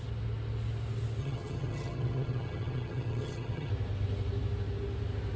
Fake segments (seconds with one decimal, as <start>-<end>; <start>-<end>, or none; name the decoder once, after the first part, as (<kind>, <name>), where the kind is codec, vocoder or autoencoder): 1.2-3.7 (vocoder, HiFi-GAN)